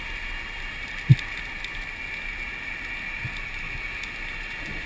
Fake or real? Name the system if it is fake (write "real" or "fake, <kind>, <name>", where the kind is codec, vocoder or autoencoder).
real